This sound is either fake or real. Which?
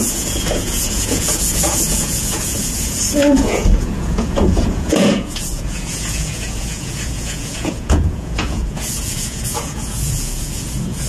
fake